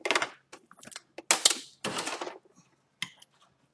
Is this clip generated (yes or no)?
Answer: no